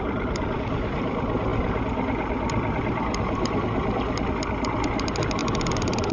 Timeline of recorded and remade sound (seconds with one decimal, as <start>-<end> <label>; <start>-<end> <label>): 0.0-5.4 recorded; 5.4-6.1 remade